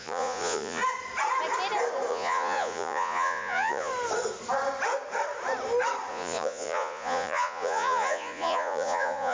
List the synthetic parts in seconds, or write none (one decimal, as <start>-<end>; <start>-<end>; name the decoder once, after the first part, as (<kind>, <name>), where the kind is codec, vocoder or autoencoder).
0.0-0.8 (vocoder, Vocos); 2.1-3.9; 6.1-9.3